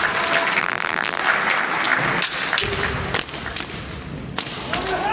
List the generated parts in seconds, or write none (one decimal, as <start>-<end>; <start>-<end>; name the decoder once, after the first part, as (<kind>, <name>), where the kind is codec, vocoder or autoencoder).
0.6-1.2 (vocoder, BigVGAN v2)